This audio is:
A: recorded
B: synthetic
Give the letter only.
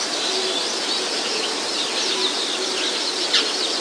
A